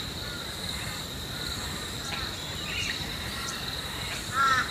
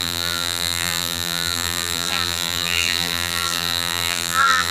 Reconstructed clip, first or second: second